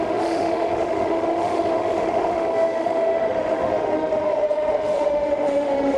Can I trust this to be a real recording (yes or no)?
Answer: no